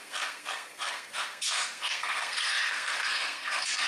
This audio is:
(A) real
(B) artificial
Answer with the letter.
B